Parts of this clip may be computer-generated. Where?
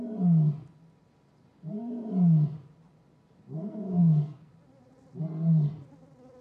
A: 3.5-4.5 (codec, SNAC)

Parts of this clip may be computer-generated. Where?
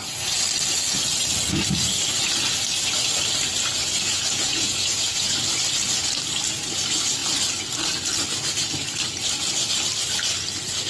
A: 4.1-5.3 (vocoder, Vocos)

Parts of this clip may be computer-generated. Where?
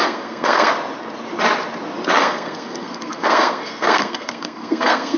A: 0.0-0.7 (codec, SNAC); 2.2-5.2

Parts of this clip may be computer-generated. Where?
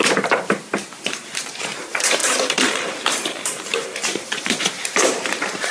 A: 0.0-5.7 (vocoder, BigVGAN v2)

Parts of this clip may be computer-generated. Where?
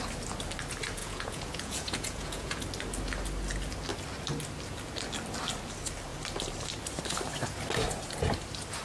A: 1.0-2.6 (vocoder, Vocos)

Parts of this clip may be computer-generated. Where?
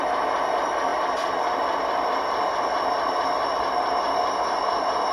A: none